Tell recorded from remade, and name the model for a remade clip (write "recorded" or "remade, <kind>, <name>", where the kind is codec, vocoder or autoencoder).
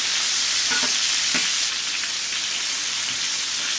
recorded